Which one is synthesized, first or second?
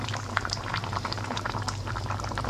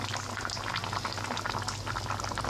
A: first